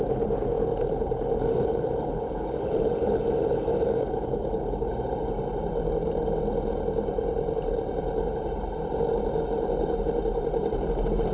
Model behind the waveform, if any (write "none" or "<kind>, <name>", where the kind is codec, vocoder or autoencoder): none